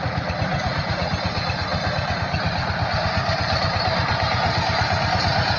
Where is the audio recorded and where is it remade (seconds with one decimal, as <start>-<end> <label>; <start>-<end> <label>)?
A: 0.0-0.5 recorded; 0.5-1.1 remade; 1.1-5.6 recorded